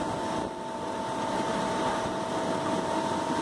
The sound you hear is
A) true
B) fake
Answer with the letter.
A